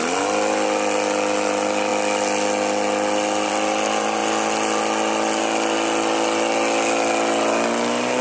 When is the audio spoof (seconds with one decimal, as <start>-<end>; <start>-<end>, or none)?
none